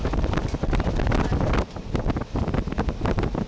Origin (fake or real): real